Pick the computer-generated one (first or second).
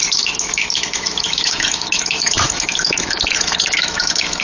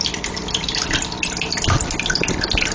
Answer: first